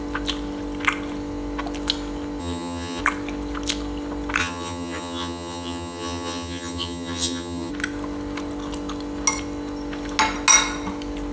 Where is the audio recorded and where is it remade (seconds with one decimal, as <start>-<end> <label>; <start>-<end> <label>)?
0.0-2.4 recorded; 2.4-3.0 remade; 3.0-4.4 recorded; 4.4-7.7 remade; 7.7-11.3 recorded